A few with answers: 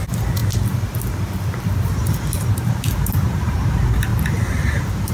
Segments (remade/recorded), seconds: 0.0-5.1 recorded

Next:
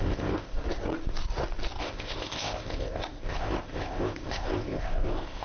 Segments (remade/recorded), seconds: 0.0-0.6 remade; 0.6-1.8 recorded; 1.8-5.4 remade

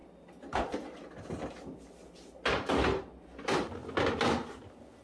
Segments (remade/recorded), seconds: 0.0-5.0 recorded

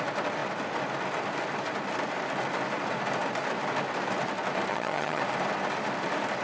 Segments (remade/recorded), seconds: 0.0-4.7 recorded; 4.7-5.2 remade; 5.2-6.4 recorded

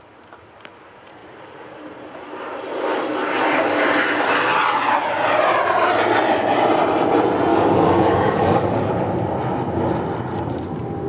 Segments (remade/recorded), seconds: 0.0-7.5 recorded; 7.5-8.9 remade; 8.9-11.1 recorded

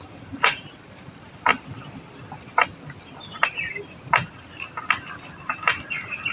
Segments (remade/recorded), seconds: 0.0-1.5 remade; 1.5-5.3 recorded; 5.3-6.3 remade

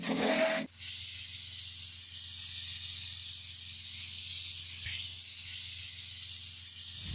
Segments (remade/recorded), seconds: 0.0-7.1 recorded

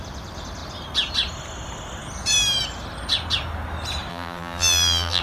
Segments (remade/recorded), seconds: 0.0-4.1 recorded; 4.1-5.2 remade